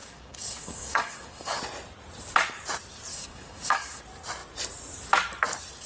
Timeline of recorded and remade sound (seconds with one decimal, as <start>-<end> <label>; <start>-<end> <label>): 0.0-1.6 remade; 1.6-3.1 recorded; 3.1-4.0 remade; 4.0-5.9 recorded